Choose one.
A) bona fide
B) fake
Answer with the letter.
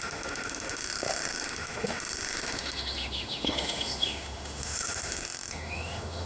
B